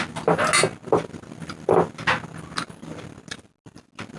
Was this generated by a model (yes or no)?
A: no